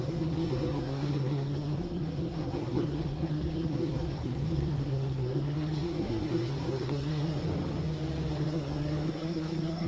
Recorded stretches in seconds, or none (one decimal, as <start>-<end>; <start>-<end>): 7.4-8.3